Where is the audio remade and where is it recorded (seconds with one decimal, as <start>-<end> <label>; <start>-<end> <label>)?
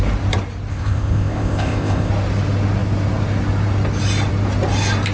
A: 0.0-0.7 recorded; 0.7-2.1 remade; 2.1-5.1 recorded